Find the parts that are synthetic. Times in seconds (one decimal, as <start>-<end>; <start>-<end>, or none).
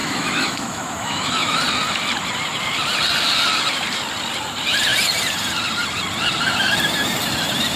0.0-1.6